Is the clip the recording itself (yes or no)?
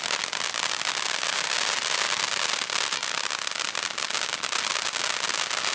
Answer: yes